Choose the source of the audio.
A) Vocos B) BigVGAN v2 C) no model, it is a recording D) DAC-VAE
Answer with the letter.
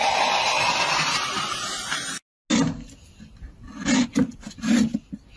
C